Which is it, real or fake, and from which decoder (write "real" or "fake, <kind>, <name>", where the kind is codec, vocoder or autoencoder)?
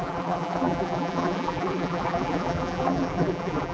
fake, vocoder, BigVGAN v2